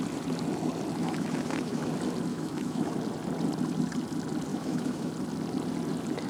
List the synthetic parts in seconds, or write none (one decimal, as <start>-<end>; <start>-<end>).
1.0-1.9; 2.3-2.9; 4.5-5.1